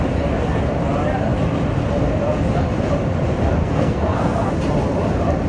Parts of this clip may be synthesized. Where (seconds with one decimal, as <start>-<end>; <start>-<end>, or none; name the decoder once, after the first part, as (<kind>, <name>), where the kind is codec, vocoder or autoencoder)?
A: 3.6-4.5 (codec, SNAC)